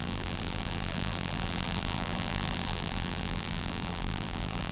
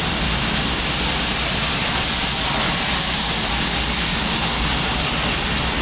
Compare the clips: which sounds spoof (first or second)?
first